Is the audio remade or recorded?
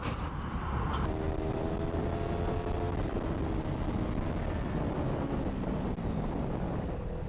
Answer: recorded